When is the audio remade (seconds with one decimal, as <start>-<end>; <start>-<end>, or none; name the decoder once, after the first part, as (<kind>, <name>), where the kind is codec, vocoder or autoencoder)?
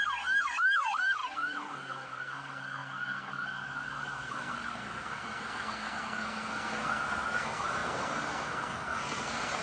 0.0-9.6 (codec, SNAC)